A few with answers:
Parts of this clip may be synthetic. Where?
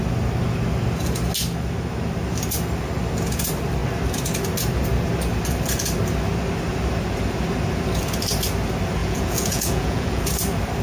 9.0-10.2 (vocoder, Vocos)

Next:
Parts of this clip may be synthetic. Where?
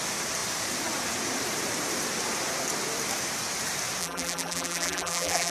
4.0-5.5 (vocoder, BigVGAN v2)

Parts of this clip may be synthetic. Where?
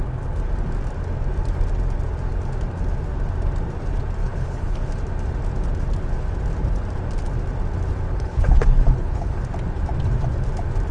4.2-4.9 (codec, HILCodec); 8.1-9.4